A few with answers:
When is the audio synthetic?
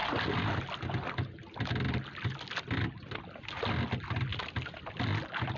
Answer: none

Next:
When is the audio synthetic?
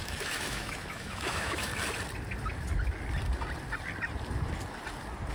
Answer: 0.0-1.7 (autoencoder, DAC-VAE)